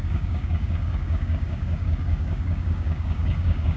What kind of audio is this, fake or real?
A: fake